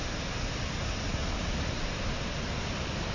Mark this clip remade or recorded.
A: recorded